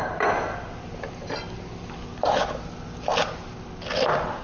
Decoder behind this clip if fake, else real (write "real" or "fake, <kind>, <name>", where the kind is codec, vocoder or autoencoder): real